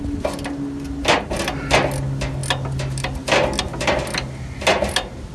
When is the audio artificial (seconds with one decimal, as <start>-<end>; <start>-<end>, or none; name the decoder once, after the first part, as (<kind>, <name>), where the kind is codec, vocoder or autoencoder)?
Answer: none